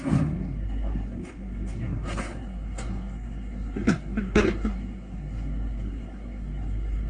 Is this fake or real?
fake